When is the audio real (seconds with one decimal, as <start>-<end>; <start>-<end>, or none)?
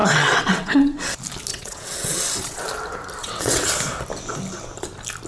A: 1.1-1.5; 2.6-3.2; 3.7-5.3